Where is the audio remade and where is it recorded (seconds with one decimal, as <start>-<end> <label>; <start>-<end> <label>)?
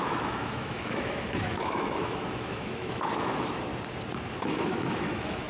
0.0-3.7 remade; 3.7-4.4 recorded; 4.4-5.5 remade